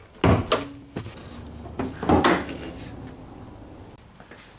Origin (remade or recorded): recorded